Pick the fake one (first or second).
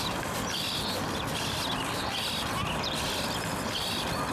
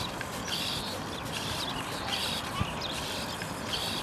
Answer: second